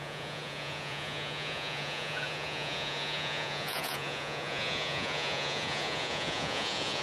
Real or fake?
fake